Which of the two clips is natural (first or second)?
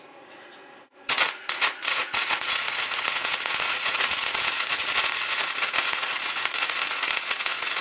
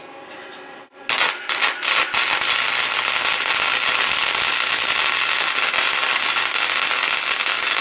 second